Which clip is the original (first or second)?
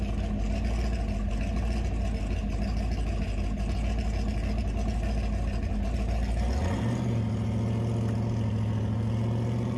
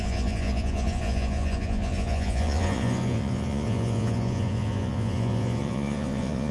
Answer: first